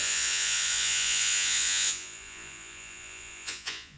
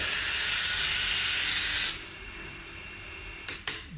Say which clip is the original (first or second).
second